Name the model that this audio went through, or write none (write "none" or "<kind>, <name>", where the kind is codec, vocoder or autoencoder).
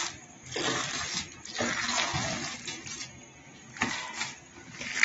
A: none